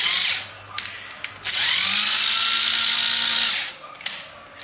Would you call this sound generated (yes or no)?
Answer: no